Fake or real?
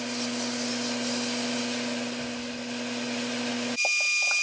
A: real